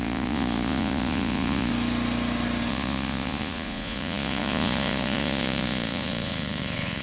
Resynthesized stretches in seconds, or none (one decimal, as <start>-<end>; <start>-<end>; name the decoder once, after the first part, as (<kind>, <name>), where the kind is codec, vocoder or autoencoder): 0.0-1.7 (vocoder, Vocos); 2.7-7.0